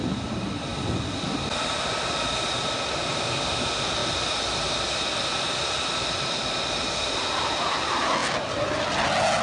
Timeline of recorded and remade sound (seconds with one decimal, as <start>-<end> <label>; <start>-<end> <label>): 0.0-9.4 recorded